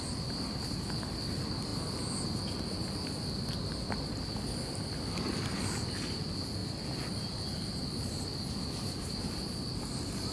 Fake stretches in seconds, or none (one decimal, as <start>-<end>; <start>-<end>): none